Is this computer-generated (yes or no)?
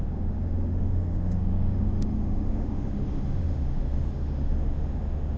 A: yes